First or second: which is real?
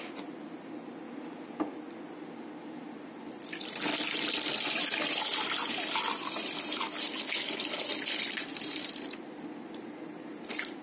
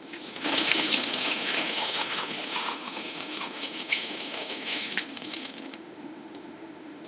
first